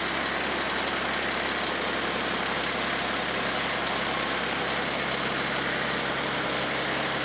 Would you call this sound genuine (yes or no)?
yes